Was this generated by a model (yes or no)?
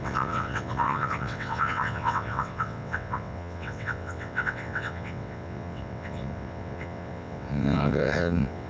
yes